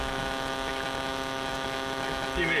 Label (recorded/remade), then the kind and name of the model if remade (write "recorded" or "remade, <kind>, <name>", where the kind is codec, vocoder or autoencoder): remade, autoencoder, DAC-VAE